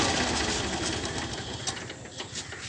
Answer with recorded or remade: recorded